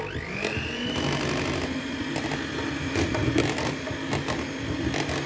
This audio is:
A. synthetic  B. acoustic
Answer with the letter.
B